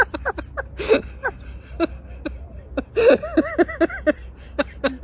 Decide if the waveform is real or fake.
real